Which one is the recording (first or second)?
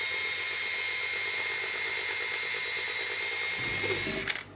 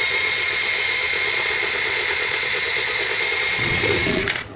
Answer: first